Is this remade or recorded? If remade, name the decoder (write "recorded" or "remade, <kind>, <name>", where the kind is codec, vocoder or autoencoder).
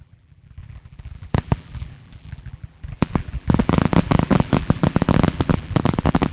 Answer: remade, vocoder, BigVGAN v2